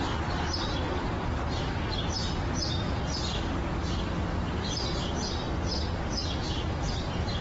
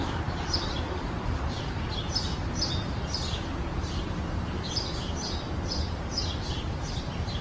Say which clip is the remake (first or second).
second